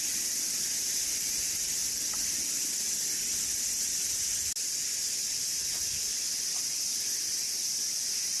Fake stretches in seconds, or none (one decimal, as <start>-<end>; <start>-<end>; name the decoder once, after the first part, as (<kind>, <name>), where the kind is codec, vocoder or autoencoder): none